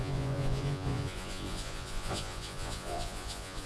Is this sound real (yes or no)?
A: no